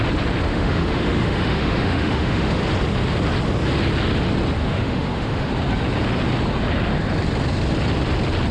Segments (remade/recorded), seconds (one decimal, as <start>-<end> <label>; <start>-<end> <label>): 0.0-0.5 recorded; 0.5-2.6 remade; 2.6-4.6 recorded; 4.6-5.5 remade; 5.5-8.5 recorded